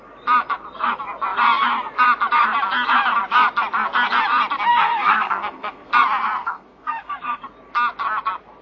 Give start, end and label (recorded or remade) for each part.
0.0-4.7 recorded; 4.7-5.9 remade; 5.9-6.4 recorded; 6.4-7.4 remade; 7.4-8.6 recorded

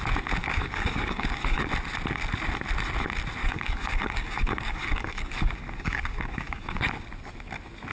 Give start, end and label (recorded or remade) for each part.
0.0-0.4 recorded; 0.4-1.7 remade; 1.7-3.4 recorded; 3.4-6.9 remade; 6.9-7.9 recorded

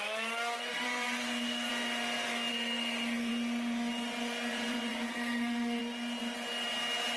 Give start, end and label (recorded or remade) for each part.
0.0-0.7 recorded; 0.7-1.7 remade; 1.7-2.5 recorded; 2.5-3.3 remade; 3.3-4.9 recorded; 4.9-5.8 remade; 5.8-7.2 recorded